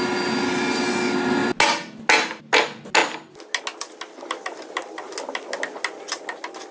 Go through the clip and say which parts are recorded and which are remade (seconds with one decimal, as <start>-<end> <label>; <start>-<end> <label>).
0.0-6.7 recorded